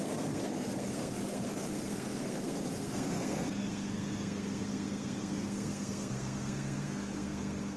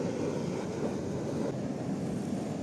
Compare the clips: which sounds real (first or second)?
second